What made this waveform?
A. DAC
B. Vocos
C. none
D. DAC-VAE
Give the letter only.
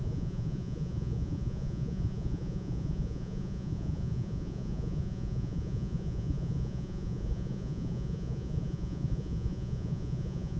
B